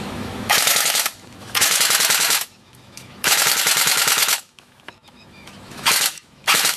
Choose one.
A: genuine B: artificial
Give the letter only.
B